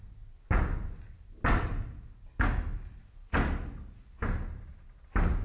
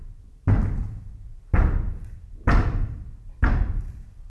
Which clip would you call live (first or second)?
first